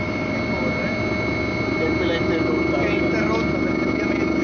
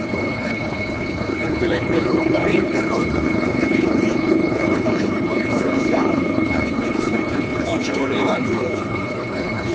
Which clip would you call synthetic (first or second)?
second